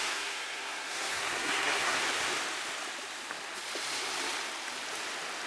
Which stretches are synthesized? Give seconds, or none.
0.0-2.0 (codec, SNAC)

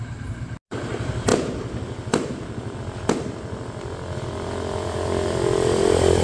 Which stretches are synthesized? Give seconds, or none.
none

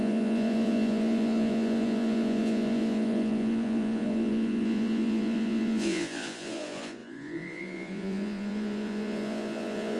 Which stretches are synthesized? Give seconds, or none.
0.0-10.0 (vocoder, Vocos)

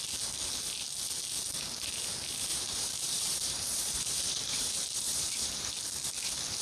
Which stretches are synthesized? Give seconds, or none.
2.5-5.7 (vocoder, BigVGAN v2)

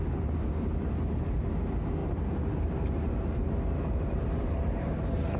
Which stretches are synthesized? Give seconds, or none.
2.0-5.4 (vocoder, BigVGAN v2)